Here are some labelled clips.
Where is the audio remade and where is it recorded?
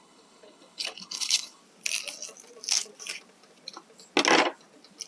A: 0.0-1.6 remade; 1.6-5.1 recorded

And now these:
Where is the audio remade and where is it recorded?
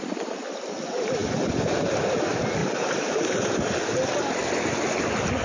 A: 0.0-2.6 recorded; 2.6-3.3 remade; 3.3-5.4 recorded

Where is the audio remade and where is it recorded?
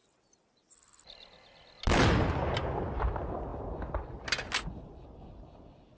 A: 0.0-6.0 recorded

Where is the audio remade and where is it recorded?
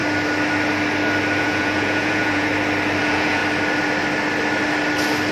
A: 0.0-1.4 recorded; 1.4-2.5 remade; 2.5-3.0 recorded; 3.0-3.4 remade; 3.4-5.3 recorded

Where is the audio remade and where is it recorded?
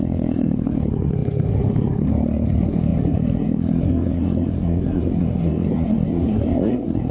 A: 0.0-7.1 remade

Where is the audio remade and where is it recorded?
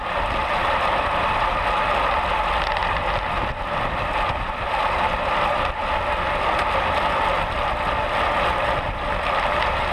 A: 0.0-9.9 recorded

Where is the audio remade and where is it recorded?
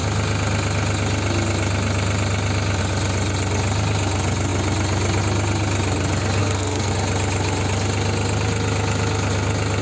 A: 0.0-6.4 recorded; 6.4-6.9 remade; 6.9-9.8 recorded